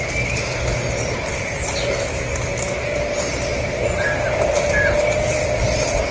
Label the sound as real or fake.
real